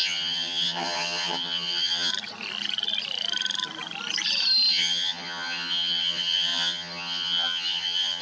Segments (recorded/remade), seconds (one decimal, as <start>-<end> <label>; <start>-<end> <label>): 0.0-2.1 remade; 2.1-4.7 recorded; 4.7-8.2 remade